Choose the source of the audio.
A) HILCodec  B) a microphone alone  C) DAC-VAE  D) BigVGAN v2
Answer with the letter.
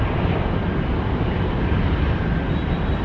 B